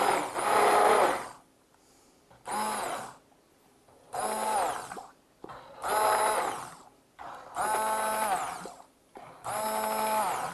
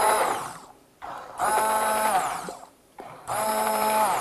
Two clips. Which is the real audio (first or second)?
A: first